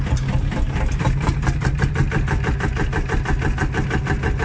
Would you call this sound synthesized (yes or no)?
no